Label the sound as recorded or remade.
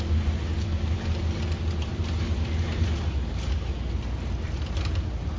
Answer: recorded